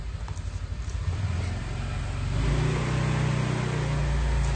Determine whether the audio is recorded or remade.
recorded